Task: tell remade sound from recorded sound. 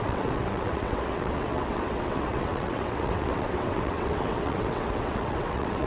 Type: remade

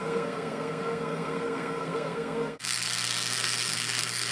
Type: remade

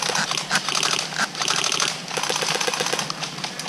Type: recorded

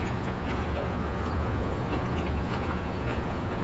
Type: remade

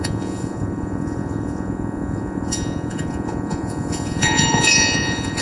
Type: remade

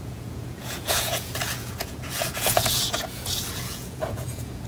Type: remade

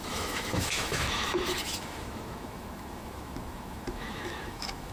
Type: remade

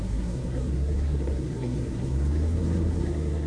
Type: remade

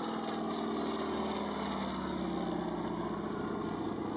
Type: recorded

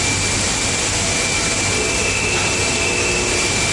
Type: recorded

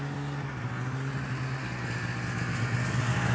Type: recorded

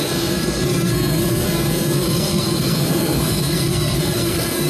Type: remade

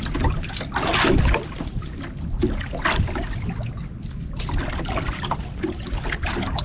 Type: recorded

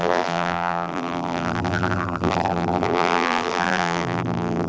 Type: remade